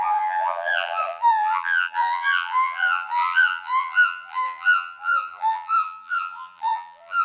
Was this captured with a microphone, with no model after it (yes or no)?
no